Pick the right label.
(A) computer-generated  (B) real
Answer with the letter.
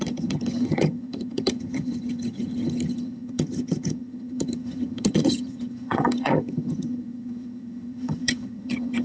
A